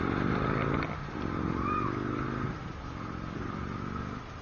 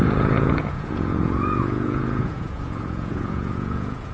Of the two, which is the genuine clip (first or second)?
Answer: first